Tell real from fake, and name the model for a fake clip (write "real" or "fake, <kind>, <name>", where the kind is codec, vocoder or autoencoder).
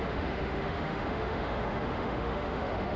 fake, autoencoder, DAC-VAE